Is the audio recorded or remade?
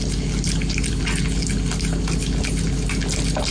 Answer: recorded